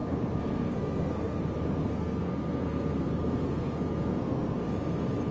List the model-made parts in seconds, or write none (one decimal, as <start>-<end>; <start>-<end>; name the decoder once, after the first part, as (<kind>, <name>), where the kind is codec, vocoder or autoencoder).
0.0-1.4 (codec, SNAC); 1.8-4.6